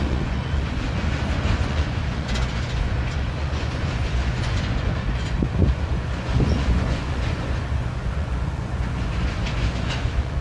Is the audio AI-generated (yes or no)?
yes